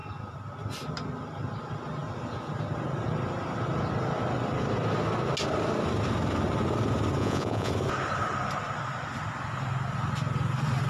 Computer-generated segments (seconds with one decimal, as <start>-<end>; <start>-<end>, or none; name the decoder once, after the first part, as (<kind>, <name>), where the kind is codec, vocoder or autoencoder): 7.2-7.7 (vocoder, Vocos)